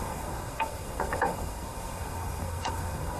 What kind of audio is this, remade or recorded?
remade